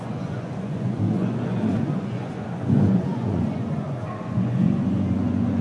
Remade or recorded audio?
remade